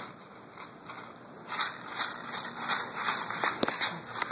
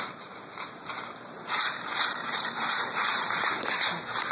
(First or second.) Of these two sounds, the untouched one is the first